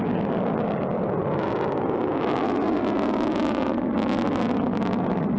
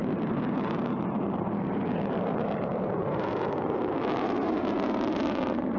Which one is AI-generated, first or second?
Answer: second